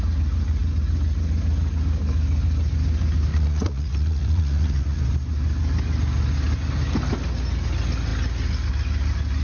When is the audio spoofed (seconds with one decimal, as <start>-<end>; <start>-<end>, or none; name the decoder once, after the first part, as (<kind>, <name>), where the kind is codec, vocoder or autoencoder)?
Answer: 3.3-5.0 (vocoder, Vocos)